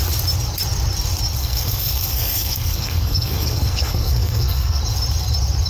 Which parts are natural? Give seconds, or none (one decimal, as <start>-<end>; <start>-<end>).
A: 0.0-1.4; 4.8-5.7